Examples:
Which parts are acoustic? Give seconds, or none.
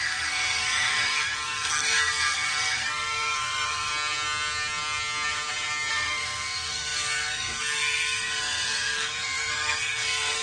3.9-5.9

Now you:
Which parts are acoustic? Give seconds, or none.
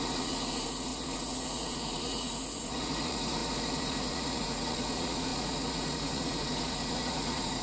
none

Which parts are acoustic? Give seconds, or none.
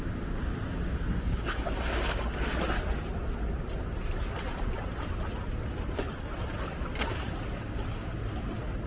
0.0-0.9; 2.0-8.9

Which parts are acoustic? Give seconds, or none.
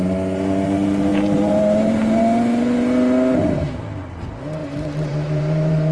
0.0-1.1; 2.2-4.6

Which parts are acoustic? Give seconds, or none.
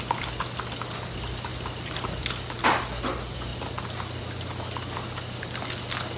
0.0-6.2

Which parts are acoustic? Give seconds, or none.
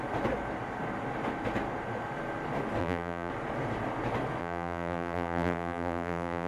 0.0-2.8; 3.3-4.4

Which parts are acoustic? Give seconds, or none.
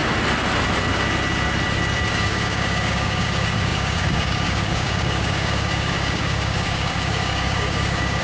0.0-2.1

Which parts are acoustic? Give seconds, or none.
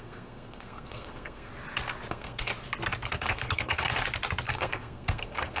1.5-2.1; 2.5-3.1; 3.9-4.5